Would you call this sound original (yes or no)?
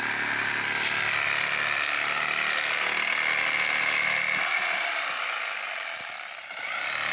yes